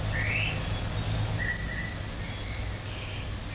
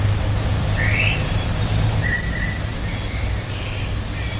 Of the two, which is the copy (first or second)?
second